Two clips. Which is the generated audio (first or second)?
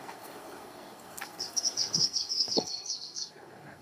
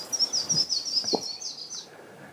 first